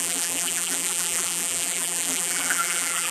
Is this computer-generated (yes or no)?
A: yes